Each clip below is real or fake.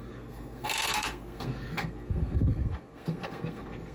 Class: fake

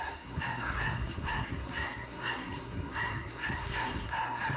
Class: fake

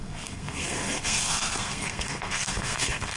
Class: fake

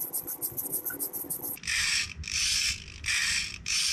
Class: real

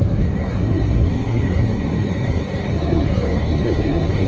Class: fake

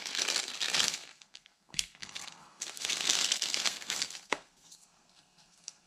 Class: fake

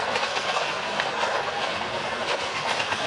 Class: fake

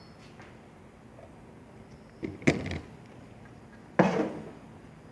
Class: real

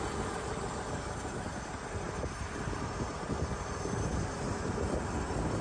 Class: real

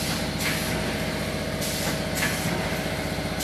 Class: real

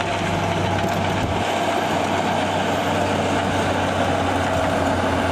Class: real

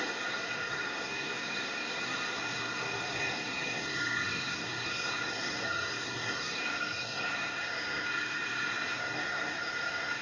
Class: fake